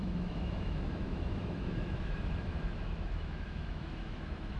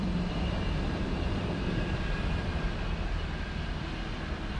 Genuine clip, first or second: second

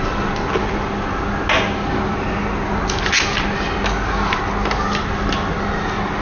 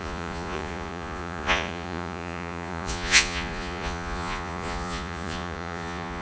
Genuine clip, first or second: first